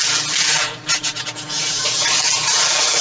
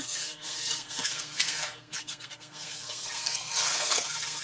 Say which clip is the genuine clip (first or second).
first